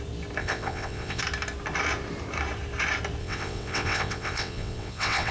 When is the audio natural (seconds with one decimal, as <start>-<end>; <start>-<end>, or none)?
0.0-0.4; 1.2-3.2